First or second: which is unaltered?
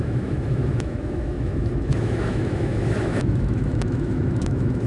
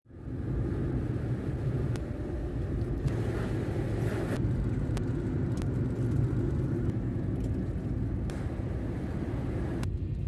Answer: second